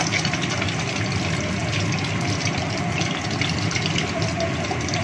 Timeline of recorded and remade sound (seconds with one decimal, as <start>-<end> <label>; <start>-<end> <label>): 0.0-5.0 recorded